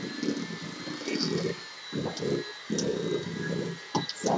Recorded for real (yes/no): yes